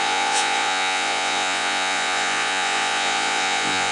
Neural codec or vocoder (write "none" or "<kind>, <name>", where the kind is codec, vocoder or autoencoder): vocoder, Vocos